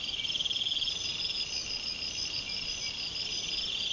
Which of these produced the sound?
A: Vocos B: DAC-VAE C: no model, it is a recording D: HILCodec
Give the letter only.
C